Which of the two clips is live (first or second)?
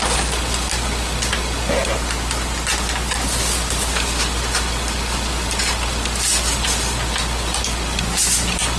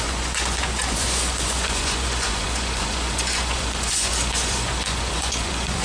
first